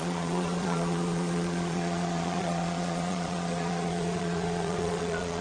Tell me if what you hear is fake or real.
fake